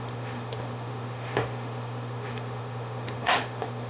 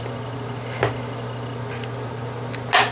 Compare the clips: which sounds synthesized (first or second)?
first